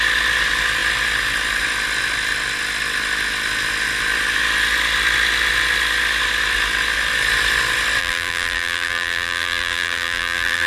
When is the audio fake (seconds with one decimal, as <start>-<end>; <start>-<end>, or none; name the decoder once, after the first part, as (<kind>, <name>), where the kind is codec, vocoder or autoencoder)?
8.0-10.7 (vocoder, BigVGAN v2)